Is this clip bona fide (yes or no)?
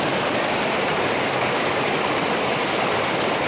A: yes